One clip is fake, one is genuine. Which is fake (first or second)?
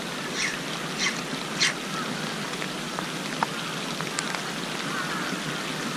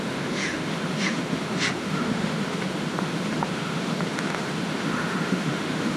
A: second